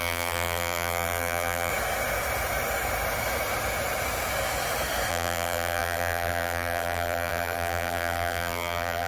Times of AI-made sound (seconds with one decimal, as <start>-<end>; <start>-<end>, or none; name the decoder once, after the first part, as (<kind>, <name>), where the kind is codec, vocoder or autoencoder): 0.0-1.7 (vocoder, BigVGAN v2); 5.1-9.1